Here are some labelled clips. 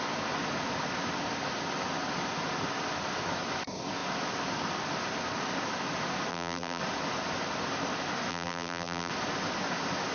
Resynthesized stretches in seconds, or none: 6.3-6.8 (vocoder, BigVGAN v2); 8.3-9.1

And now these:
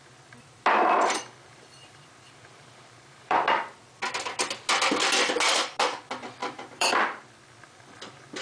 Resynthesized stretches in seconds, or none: 1.4-3.4 (vocoder, BigVGAN v2); 6.4-6.9